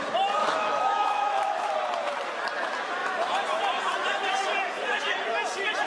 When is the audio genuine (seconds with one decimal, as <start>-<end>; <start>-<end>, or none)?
0.0-0.4; 1.7-5.9